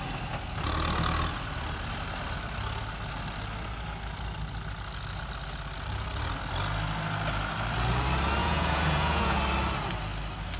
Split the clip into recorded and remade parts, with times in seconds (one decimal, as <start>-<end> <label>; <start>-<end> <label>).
0.0-8.4 recorded; 8.4-9.4 remade; 9.4-10.6 recorded